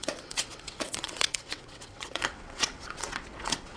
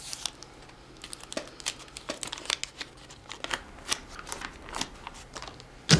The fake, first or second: first